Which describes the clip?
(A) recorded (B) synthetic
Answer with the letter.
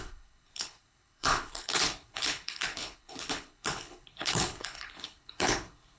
B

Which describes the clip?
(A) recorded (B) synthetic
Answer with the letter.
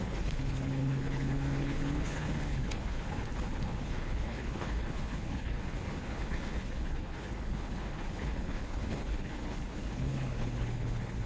B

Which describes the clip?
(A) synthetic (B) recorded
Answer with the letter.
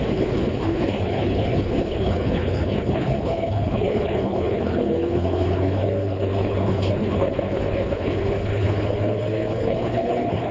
A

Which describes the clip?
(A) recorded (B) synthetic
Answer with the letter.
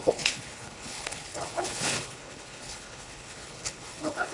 B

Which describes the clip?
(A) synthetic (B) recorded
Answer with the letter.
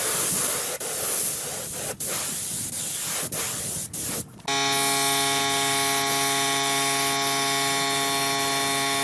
B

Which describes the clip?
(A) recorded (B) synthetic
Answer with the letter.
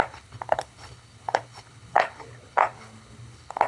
B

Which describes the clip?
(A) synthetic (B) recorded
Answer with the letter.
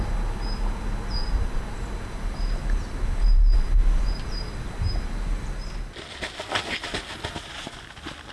B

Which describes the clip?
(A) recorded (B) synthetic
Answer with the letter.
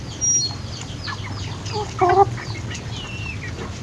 A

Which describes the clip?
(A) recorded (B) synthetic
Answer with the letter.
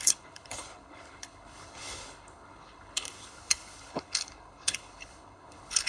B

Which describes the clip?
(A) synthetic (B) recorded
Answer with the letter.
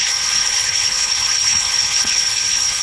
A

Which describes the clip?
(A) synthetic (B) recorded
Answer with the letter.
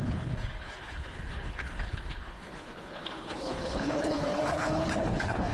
A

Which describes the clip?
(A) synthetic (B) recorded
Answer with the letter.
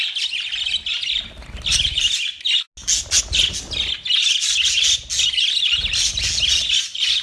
B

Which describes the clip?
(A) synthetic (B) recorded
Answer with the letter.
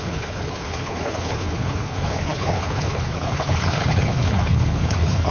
A